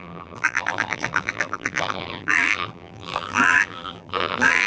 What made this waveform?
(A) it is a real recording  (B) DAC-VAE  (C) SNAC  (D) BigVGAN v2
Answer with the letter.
D